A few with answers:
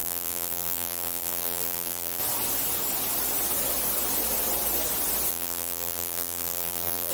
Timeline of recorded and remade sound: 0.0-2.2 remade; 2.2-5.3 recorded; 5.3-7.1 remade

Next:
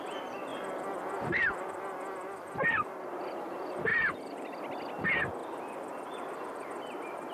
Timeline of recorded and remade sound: 0.0-3.9 recorded; 3.9-4.6 remade; 4.6-5.4 recorded; 5.4-6.5 remade; 6.5-7.3 recorded

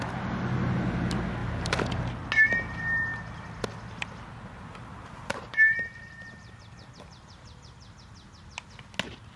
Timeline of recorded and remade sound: 0.0-1.4 recorded; 1.4-2.0 remade; 2.0-4.7 recorded; 4.7-6.9 remade; 6.9-9.4 recorded